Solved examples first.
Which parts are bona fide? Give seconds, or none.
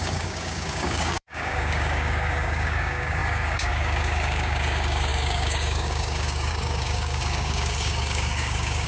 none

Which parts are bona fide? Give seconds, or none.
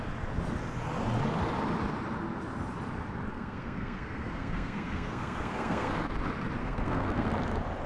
0.0-3.3; 5.9-6.6; 7.3-7.9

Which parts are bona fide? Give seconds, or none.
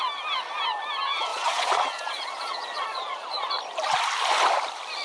0.0-1.3; 3.5-5.0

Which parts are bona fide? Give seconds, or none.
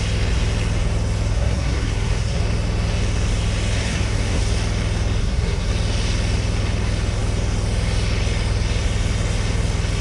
0.0-1.3; 2.4-3.8; 4.4-5.2; 5.7-10.0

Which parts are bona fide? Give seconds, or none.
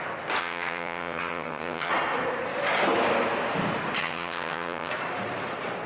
0.0-0.4; 1.9-4.0; 4.9-5.9